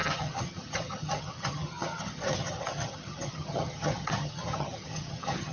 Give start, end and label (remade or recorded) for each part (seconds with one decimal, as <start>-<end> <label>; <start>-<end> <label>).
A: 0.0-5.5 remade